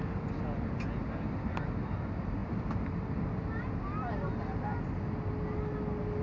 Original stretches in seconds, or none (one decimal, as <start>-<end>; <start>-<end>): 0.0-6.2